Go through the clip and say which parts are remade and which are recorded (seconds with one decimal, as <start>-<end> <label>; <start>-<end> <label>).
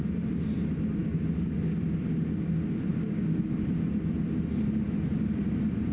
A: 0.0-1.0 recorded; 1.0-1.8 remade; 1.8-2.9 recorded; 2.9-3.4 remade; 3.4-5.9 recorded